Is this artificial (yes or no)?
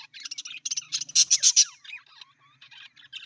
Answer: no